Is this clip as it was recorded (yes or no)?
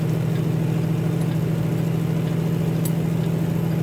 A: yes